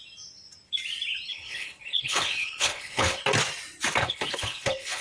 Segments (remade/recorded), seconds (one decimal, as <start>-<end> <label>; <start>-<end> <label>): 0.0-1.3 recorded; 1.3-3.2 remade; 3.2-4.0 recorded; 4.0-5.0 remade